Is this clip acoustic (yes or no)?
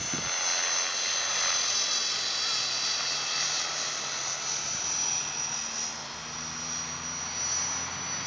yes